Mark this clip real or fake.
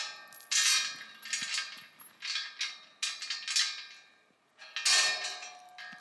real